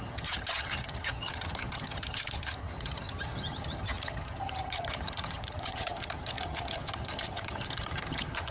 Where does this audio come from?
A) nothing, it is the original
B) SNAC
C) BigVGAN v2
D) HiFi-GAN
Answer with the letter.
D